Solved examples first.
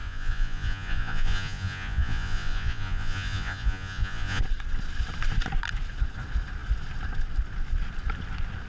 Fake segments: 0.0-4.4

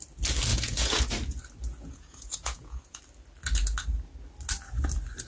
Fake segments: 0.5-1.1; 1.7-3.0

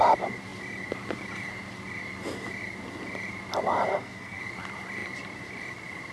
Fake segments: 3.9-4.4

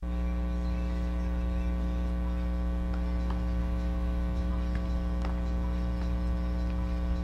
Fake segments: 3.6-4.5